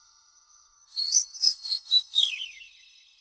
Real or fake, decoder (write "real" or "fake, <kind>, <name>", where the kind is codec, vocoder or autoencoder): fake, codec, SNAC